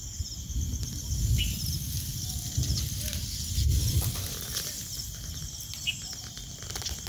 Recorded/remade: recorded